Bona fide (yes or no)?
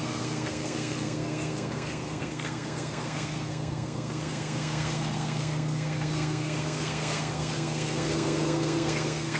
no